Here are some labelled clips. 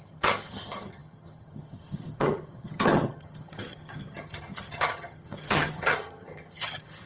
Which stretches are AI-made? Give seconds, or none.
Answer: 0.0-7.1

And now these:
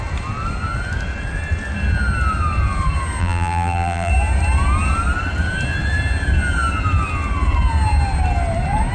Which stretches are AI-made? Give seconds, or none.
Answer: 3.2-4.1

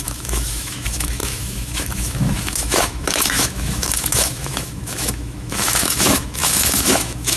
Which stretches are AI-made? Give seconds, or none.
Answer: 0.0-7.4